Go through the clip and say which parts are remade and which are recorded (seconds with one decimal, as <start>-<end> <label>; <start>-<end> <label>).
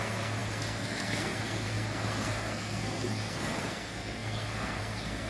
0.0-5.3 remade